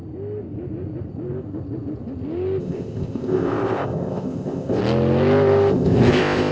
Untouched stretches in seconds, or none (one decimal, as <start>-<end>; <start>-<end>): 0.0-2.6; 4.8-5.7